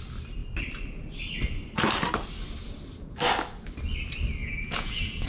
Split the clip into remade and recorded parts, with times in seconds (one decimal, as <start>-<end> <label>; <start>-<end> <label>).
0.0-4.4 recorded; 4.4-5.3 remade

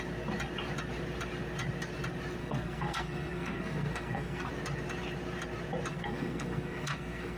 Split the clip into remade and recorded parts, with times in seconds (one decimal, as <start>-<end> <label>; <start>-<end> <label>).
0.0-2.4 recorded; 2.4-4.5 remade; 4.5-5.9 recorded; 5.9-7.4 remade

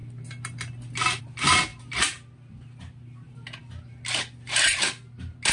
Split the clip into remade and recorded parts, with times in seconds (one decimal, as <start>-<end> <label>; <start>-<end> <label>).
0.0-5.5 recorded

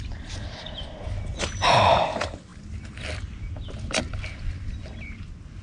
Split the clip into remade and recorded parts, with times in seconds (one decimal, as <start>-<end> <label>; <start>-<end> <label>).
0.0-5.6 recorded

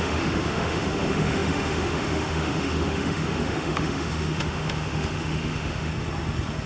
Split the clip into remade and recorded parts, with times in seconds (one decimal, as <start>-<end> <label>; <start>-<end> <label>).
0.0-5.9 remade; 5.9-6.7 recorded

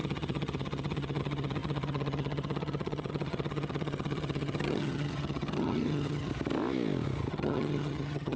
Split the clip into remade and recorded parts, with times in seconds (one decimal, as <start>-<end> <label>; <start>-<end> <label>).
0.0-6.3 remade; 6.3-7.3 recorded; 7.3-8.4 remade